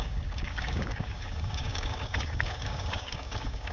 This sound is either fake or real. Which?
fake